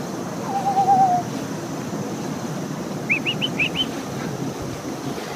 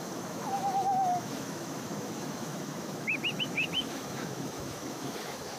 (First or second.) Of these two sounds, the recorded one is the first